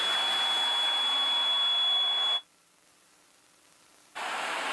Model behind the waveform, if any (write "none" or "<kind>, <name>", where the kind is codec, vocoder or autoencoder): none